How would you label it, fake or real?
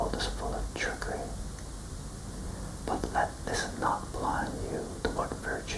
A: real